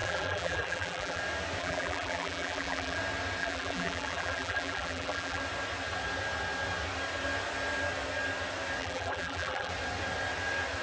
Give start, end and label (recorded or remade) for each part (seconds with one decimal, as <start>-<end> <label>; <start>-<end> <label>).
0.0-1.2 remade; 1.2-1.6 recorded; 1.6-3.0 remade; 3.0-3.4 recorded; 3.4-5.4 remade; 5.4-8.8 recorded; 8.8-9.7 remade; 9.7-10.8 recorded